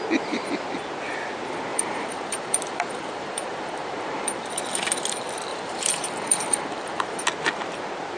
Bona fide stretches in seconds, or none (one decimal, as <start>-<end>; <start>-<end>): 0.0-1.7; 4.5-5.5; 7.2-8.2